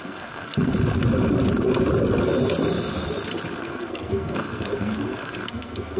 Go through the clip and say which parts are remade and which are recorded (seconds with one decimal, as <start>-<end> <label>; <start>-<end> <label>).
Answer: 0.0-0.7 remade; 0.7-3.6 recorded; 3.6-6.0 remade